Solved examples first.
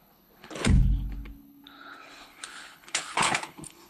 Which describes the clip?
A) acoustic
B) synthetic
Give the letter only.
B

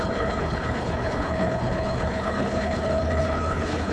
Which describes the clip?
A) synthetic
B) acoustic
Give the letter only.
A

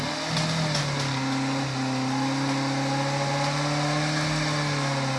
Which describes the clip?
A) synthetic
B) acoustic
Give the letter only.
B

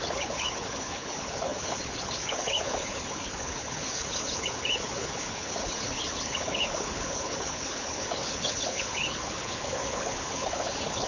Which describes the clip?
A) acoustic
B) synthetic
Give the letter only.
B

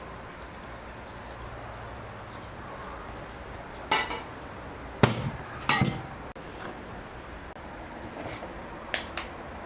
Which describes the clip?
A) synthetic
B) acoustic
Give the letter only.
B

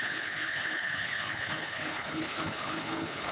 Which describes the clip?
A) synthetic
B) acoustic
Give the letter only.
A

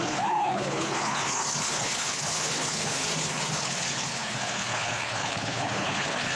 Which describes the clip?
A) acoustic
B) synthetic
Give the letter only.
B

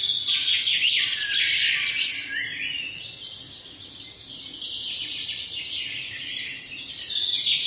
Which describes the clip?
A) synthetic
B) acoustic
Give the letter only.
B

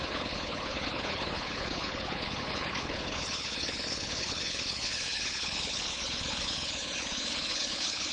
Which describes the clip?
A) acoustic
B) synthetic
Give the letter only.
B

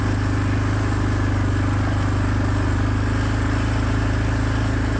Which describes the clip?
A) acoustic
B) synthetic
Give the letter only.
A